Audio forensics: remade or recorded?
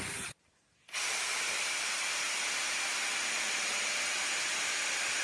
remade